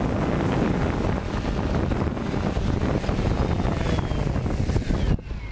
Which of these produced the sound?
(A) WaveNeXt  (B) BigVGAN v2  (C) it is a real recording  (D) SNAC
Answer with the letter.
C